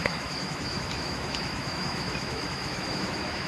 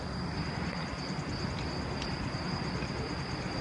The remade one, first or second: first